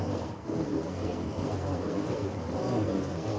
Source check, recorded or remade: remade